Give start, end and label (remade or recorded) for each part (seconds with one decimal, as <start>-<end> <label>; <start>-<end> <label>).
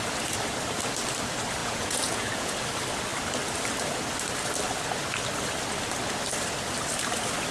0.0-1.6 recorded; 1.6-2.5 remade; 2.5-7.5 recorded